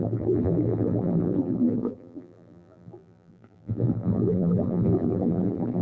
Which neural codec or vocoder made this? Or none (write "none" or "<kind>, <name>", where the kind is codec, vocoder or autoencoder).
vocoder, BigVGAN v2